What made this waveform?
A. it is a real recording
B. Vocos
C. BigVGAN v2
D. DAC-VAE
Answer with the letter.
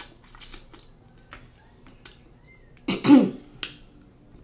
A